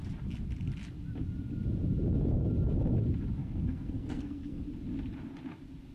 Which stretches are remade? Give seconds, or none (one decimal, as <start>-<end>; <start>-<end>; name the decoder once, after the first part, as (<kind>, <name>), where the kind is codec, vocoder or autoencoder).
3.4-4.6 (codec, SNAC)